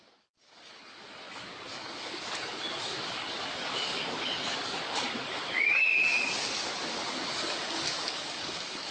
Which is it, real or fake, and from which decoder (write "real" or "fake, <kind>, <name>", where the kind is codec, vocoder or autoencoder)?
fake, codec, DAC